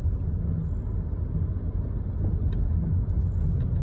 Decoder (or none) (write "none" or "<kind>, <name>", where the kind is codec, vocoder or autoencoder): none